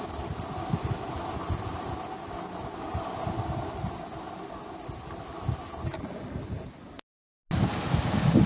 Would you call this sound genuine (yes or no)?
yes